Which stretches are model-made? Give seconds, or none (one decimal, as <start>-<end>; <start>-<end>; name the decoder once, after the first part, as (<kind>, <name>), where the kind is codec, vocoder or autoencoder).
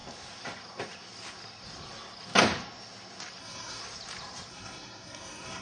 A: 3.4-3.8 (codec, SNAC); 4.5-5.6